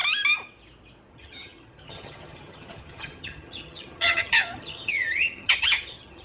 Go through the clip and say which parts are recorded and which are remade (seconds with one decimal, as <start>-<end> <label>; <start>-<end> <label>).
0.0-1.1 recorded; 1.1-6.2 remade